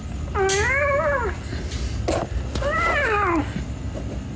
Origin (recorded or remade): recorded